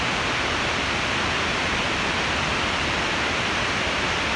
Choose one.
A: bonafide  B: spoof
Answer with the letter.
A